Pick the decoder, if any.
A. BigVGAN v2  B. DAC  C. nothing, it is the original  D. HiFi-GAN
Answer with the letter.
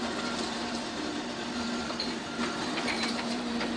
A